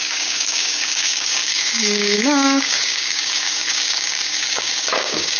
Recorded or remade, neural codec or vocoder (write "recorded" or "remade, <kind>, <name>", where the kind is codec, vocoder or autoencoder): remade, codec, DAC